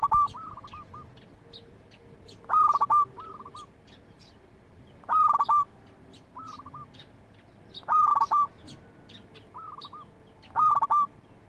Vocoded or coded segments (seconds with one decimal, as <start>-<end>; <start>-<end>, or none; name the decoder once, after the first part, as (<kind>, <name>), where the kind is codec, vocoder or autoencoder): 3.1-7.2 (vocoder, BigVGAN v2); 8.1-10.7